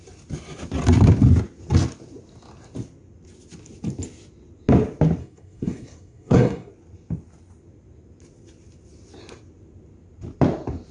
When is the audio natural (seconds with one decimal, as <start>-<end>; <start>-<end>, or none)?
0.0-5.2; 6.7-10.9